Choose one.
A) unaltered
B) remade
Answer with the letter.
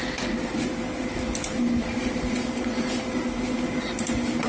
A